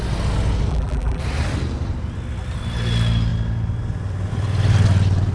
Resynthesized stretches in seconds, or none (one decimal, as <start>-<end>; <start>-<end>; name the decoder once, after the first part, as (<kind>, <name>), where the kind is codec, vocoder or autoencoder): 0.7-1.2 (vocoder, BigVGAN v2)